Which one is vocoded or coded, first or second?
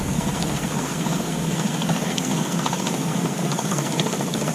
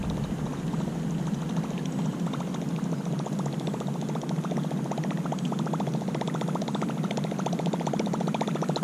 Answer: first